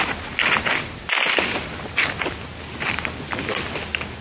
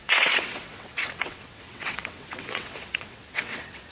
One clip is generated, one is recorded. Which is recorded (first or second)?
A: first